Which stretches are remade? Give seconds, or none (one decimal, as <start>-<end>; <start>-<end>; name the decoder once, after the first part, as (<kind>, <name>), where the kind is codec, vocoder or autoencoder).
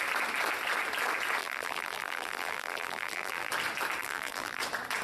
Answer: 1.4-3.5 (vocoder, BigVGAN v2); 4.0-4.6